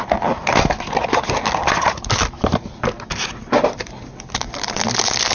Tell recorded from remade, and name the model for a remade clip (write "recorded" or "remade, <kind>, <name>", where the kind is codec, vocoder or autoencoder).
recorded